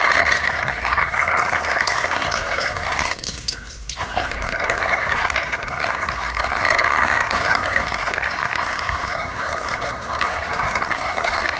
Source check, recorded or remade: remade